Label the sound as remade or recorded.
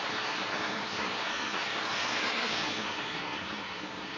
remade